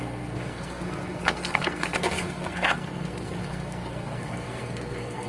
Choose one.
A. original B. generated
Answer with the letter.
B